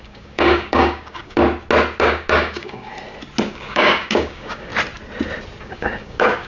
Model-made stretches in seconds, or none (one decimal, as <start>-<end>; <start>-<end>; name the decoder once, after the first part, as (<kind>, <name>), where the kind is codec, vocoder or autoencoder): 0.0-1.4 (codec, DAC); 2.0-2.9; 3.4-4.7; 5.6-6.5

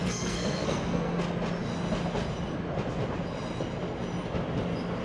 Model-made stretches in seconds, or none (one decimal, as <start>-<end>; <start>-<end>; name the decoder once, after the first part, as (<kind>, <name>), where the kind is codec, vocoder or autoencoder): 0.0-1.2 (codec, SNAC)

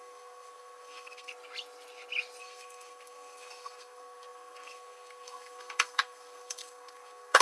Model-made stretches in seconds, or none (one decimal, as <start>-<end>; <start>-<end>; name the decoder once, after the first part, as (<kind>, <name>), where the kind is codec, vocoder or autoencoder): 0.0-1.3 (codec, SNAC); 2.4-7.4

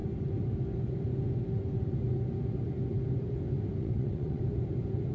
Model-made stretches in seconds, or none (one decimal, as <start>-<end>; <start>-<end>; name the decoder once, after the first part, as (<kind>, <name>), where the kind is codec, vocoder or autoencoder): 3.8-4.4 (vocoder, WaveNeXt)

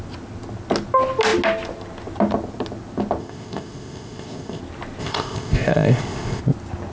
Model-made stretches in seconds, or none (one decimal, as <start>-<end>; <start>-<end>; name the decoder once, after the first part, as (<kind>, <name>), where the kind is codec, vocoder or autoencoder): 3.2-4.6 (codec, ZipCodec); 5.0-6.4

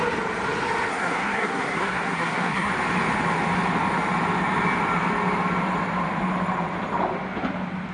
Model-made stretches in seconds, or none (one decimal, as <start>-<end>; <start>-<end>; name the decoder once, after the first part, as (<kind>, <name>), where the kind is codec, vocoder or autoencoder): 0.9-2.7 (codec, SNAC)